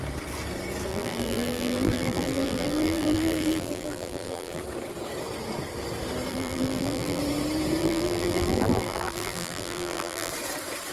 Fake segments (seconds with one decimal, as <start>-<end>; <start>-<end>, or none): 0.9-4.6; 6.3-7.2; 7.8-10.3